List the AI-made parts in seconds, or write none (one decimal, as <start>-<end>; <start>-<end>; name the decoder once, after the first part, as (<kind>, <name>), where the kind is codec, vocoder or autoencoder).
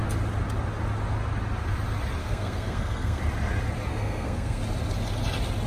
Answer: 2.2-3.2 (codec, SNAC); 3.9-4.6